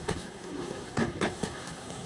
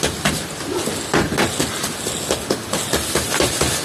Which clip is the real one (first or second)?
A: second